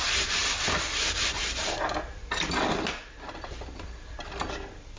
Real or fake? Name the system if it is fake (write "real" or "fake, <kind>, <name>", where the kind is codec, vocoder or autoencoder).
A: real